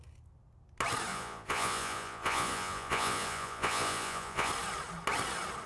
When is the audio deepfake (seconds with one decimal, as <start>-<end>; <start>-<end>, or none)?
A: 1.1-4.5